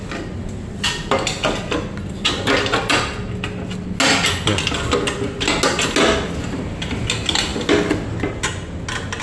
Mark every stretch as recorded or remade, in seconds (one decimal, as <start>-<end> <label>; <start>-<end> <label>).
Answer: 0.0-9.2 recorded